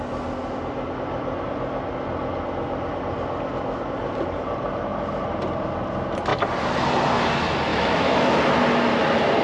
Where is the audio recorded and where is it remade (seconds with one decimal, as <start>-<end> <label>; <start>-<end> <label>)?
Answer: 0.0-7.7 recorded; 7.7-8.4 remade; 8.4-9.4 recorded